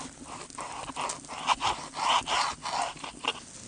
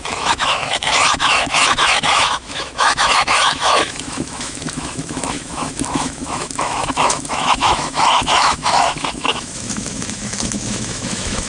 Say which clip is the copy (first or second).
second